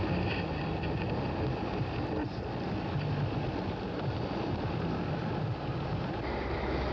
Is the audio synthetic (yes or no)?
yes